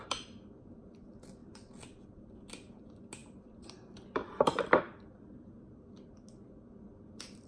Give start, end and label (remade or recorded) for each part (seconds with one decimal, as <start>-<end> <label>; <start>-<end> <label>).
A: 0.0-7.5 recorded